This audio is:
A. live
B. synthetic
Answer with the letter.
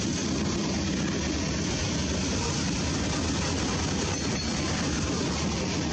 A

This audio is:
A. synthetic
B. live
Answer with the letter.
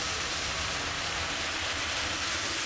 B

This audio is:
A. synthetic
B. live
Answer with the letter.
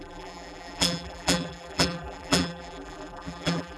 A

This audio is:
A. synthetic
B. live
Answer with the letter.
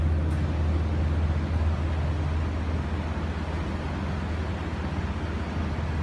B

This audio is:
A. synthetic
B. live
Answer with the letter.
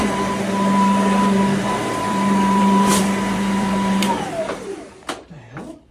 A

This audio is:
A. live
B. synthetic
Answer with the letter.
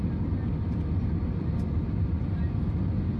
A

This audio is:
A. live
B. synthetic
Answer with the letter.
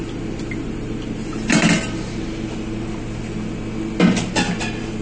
A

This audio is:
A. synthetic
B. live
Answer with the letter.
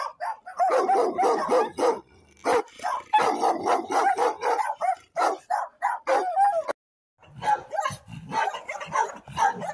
B